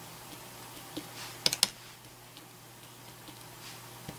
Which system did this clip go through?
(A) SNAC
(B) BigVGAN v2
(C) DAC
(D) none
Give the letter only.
D